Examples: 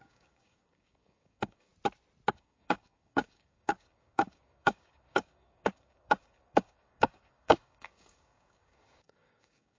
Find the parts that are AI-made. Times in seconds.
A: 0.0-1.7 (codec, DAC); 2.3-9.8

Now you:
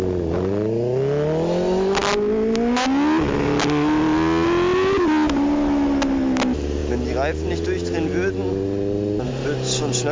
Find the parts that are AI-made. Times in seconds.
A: none

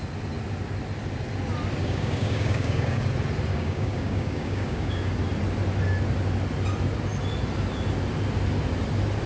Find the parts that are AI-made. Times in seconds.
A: 1.8-3.0 (codec, DAC); 3.5-5.1

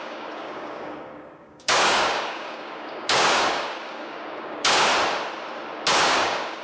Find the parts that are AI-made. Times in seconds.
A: 0.0-4.9 (codec, DAC); 5.9-6.6